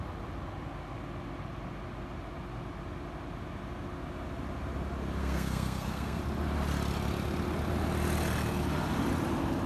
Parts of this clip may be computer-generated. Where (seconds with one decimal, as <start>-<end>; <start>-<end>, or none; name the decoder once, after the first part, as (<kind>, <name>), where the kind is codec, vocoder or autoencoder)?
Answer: 5.2-6.2 (codec, SNAC)